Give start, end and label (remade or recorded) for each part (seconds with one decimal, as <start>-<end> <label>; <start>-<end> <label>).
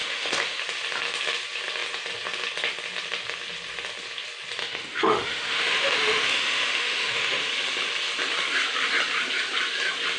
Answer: 0.0-0.6 remade; 0.6-4.6 recorded; 4.6-7.5 remade; 7.5-10.2 recorded